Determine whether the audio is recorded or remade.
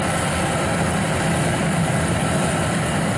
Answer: recorded